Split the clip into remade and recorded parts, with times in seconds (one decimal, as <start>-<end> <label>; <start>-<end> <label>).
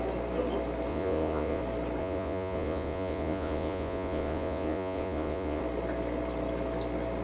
0.0-0.9 recorded; 0.9-1.6 remade; 1.6-2.0 recorded; 2.0-5.6 remade; 5.6-7.2 recorded